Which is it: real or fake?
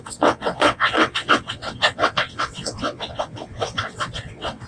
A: fake